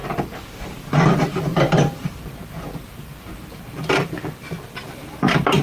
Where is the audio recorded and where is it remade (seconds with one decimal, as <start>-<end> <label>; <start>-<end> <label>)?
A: 0.0-0.9 recorded; 0.9-5.6 remade